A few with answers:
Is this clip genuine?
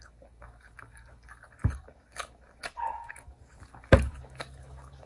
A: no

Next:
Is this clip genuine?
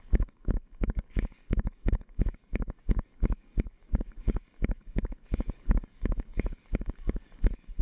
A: no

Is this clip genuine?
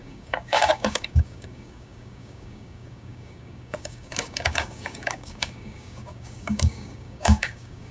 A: no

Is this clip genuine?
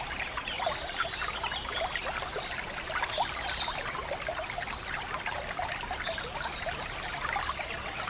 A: yes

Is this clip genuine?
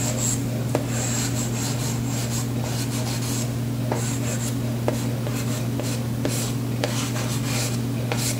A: yes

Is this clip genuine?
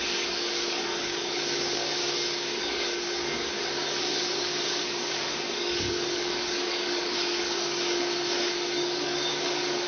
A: no